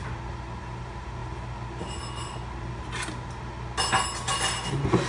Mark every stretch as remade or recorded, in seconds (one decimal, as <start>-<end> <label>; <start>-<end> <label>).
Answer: 0.0-5.1 recorded